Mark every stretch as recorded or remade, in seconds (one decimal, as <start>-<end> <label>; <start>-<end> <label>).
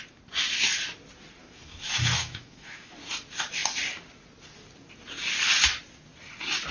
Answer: 0.0-1.4 recorded; 1.4-2.9 remade; 2.9-6.7 recorded